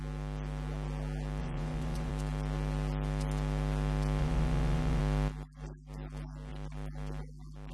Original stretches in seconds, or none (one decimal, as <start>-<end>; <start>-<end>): 0.0-1.4; 2.1-4.2; 5.0-7.7